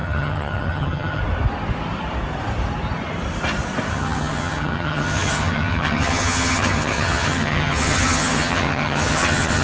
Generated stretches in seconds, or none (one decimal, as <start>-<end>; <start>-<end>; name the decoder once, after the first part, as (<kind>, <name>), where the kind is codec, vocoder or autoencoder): 0.0-1.2 (vocoder, HiFi-GAN); 3.9-9.6